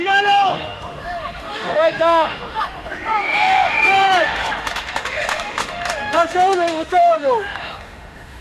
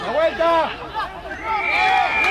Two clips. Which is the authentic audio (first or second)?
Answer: second